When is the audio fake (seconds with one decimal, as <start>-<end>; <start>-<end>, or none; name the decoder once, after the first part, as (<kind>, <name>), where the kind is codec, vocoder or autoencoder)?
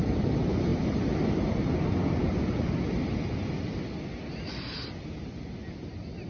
none